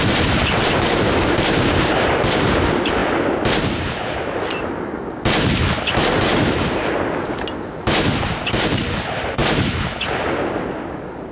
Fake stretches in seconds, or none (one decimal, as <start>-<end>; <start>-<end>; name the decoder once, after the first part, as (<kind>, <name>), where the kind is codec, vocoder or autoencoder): 0.0-3.0 (vocoder, BigVGAN v2); 8.2-9.4; 10.9-11.3